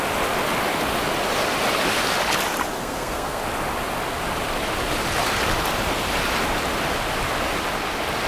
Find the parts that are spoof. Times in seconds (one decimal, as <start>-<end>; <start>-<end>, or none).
2.8-3.4